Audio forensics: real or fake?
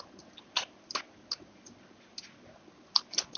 real